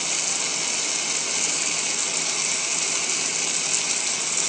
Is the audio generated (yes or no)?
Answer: no